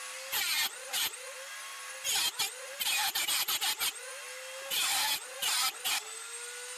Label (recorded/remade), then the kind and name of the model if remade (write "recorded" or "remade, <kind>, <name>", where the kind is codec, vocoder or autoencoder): recorded